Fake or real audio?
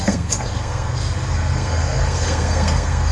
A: fake